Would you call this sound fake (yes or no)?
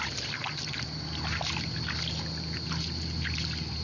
no